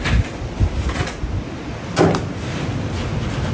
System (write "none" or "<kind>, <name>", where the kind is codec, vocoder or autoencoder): none